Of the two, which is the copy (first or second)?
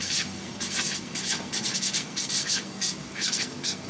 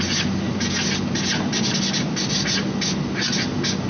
first